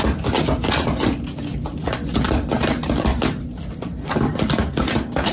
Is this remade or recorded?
recorded